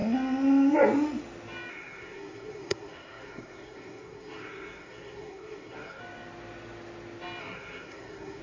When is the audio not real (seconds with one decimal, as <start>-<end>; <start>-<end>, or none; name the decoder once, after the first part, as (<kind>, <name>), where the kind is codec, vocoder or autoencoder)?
1.7-6.0 (codec, SNAC); 7.4-8.4